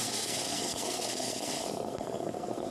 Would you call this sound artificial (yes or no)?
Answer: yes